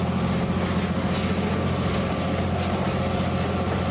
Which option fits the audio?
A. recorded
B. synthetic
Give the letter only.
A